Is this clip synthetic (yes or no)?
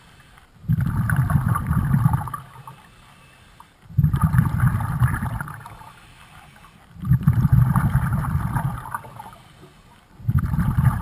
no